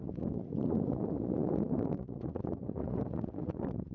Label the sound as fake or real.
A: fake